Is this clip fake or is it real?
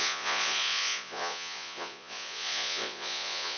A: fake